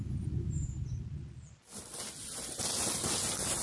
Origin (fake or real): real